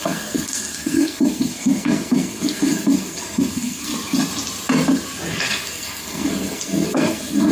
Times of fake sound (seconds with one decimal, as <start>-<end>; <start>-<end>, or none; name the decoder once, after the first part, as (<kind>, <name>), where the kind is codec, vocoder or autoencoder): 0.0-3.9 (codec, SNAC); 5.3-7.5